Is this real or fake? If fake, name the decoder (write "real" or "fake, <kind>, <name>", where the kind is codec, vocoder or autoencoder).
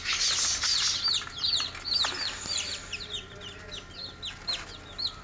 real